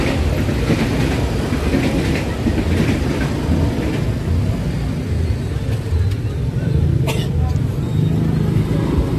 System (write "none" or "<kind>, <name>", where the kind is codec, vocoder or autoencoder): none